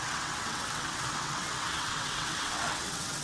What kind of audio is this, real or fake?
fake